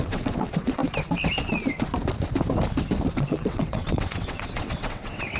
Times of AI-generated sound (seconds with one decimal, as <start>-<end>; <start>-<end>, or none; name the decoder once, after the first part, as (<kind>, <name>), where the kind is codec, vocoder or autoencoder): 0.0-0.8 (vocoder, WaveNeXt); 3.1-5.4